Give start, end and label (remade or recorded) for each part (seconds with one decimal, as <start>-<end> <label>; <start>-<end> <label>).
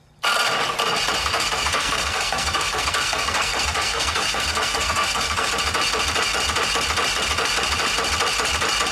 0.0-1.2 recorded; 1.2-5.5 remade; 5.5-8.9 recorded